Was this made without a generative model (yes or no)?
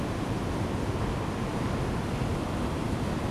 yes